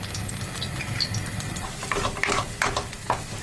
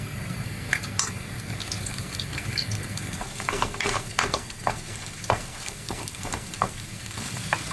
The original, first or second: first